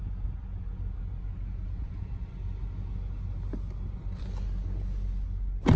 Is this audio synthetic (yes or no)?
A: no